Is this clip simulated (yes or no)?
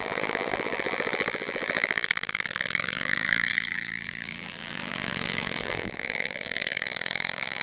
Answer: yes